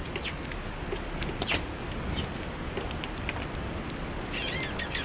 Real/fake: real